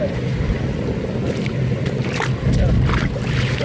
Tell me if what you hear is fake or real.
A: real